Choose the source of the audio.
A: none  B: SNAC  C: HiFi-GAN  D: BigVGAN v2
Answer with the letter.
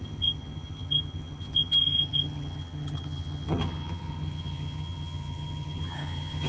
C